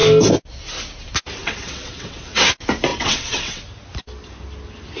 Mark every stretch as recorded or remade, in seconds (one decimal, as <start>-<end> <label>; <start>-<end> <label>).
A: 0.0-1.4 recorded; 1.4-2.5 remade; 2.5-2.9 recorded; 2.9-3.6 remade; 3.6-5.0 recorded